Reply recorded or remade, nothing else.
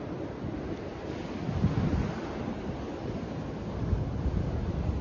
recorded